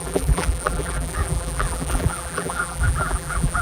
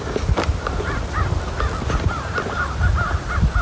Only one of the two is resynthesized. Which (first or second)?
first